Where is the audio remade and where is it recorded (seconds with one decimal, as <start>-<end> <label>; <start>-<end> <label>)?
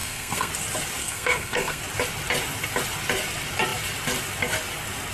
0.0-0.5 remade; 0.5-1.0 recorded; 1.0-1.8 remade; 1.8-5.1 recorded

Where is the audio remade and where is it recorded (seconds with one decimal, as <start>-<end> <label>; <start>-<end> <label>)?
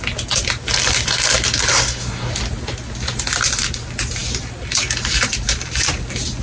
0.0-1.7 recorded; 1.7-2.3 remade; 2.3-6.4 recorded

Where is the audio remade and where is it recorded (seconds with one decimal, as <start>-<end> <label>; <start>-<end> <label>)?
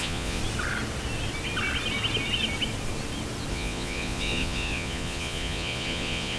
0.0-0.4 remade; 0.4-3.5 recorded; 3.5-6.4 remade